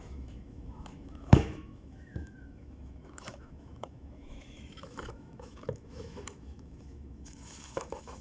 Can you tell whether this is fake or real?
fake